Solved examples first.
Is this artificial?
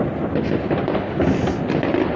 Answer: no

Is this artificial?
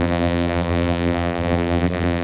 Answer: yes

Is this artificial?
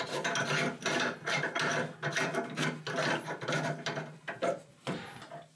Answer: no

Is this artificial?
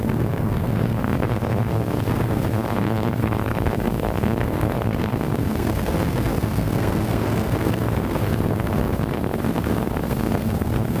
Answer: yes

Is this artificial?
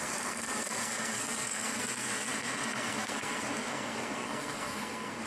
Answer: yes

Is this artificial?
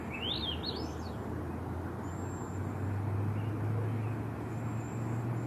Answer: no